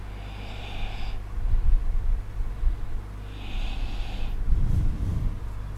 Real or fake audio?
real